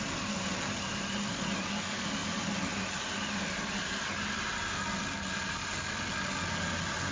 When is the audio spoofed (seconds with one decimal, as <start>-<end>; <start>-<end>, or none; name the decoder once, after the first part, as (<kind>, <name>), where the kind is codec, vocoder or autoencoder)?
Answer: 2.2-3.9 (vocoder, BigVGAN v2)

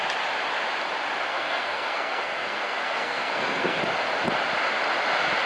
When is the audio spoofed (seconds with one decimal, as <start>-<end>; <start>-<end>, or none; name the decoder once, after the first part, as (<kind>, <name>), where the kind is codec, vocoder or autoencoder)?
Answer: 1.3-3.8 (codec, SNAC)

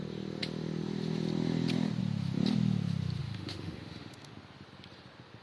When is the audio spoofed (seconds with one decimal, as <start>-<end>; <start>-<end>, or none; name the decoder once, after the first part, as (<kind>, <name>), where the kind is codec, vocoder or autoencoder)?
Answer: 3.2-4.3 (autoencoder, DAC-VAE)

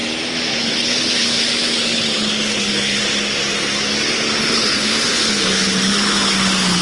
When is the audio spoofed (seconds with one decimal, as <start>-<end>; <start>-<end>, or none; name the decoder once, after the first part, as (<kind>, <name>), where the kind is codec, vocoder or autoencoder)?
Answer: 0.6-3.0 (codec, HILCodec); 4.4-6.8